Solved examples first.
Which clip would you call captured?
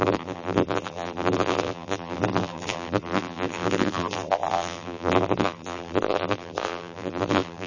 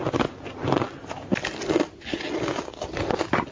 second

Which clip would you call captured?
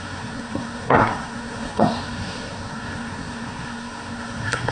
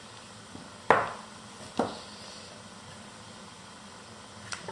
second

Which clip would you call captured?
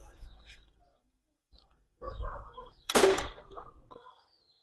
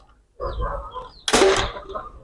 second